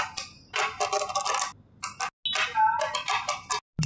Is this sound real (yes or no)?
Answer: yes